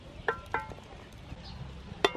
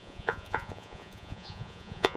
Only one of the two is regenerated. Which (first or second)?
second